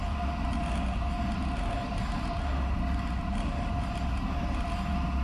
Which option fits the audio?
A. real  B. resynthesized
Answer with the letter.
A